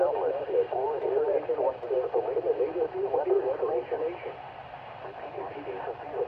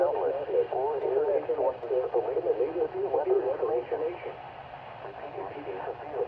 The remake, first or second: first